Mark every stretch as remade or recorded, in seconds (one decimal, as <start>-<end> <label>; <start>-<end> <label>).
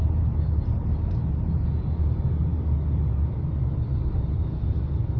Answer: 0.0-5.2 recorded